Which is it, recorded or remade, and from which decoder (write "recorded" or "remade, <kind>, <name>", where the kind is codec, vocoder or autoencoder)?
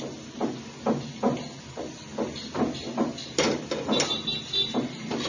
recorded